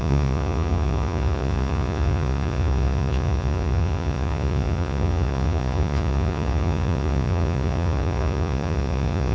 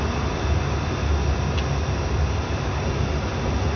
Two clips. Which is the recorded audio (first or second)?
second